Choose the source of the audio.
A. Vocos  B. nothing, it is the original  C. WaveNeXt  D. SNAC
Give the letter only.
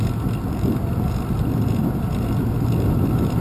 B